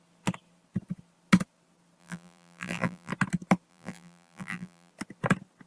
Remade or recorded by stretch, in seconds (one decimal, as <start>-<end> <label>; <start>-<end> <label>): 0.0-2.0 recorded; 2.0-3.1 remade; 3.1-3.7 recorded; 3.7-4.9 remade; 4.9-5.7 recorded